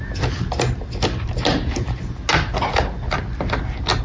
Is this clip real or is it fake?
real